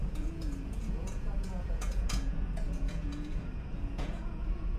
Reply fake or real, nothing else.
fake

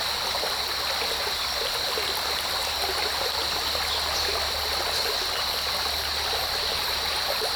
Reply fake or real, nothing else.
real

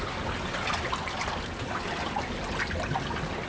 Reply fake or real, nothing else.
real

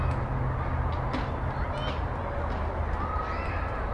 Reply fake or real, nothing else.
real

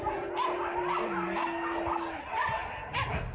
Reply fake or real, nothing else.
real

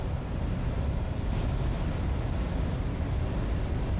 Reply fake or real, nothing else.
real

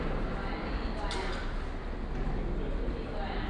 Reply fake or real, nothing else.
real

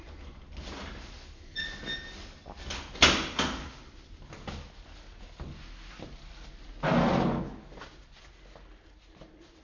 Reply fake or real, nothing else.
real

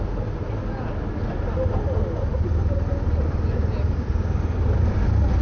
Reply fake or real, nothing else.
real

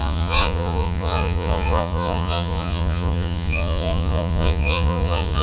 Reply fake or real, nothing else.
fake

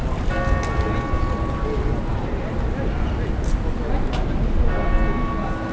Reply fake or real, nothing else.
real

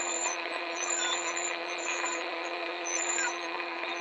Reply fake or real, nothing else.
fake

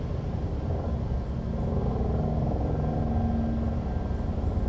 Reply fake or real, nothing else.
real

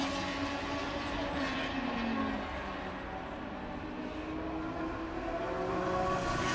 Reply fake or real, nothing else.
real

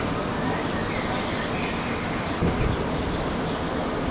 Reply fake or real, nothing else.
real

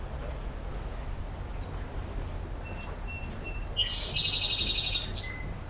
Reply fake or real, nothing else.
real